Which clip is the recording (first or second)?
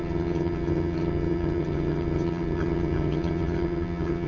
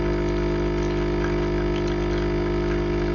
second